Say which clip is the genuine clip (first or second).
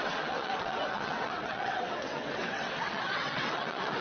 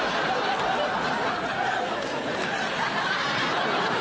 second